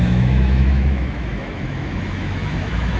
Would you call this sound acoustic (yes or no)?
no